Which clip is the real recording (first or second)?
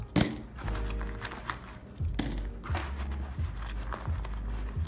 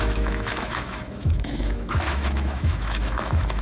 first